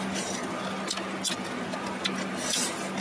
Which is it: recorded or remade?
recorded